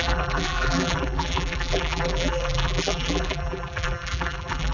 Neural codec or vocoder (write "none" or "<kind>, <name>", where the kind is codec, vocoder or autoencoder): vocoder, BigVGAN v2